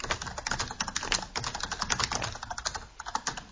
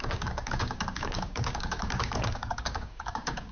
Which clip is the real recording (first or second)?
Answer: first